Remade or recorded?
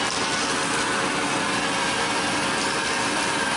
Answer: recorded